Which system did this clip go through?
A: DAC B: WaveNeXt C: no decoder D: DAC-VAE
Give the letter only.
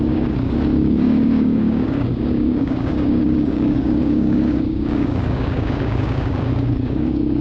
A